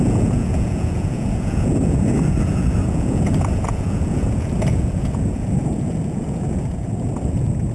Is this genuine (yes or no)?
no